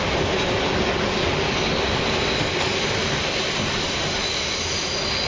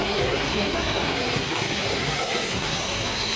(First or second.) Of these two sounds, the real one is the first